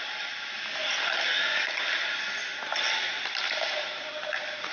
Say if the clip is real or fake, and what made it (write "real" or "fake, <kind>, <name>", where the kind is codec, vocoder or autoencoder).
real